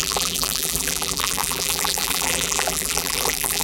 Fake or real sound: fake